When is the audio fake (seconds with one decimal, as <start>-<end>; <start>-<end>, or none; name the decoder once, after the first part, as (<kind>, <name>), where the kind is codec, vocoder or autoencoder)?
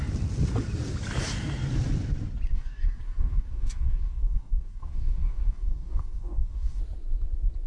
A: 2.5-6.8 (codec, DAC)